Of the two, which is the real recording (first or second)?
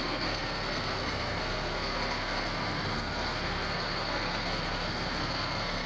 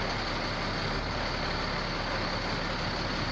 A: second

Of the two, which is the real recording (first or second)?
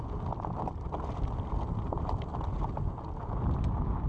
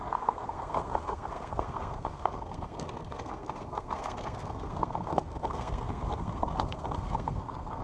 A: first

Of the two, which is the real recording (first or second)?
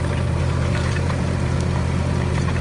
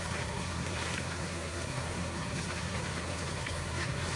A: first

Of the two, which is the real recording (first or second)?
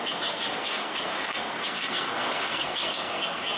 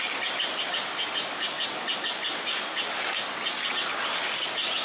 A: second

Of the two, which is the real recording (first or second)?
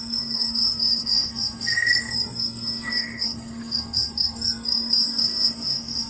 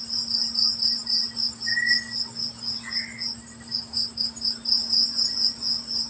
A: second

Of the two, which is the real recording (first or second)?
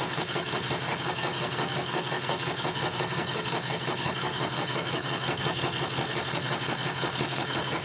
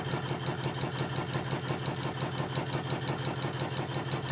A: second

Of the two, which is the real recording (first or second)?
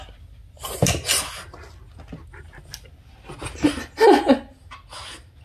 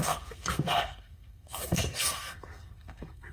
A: first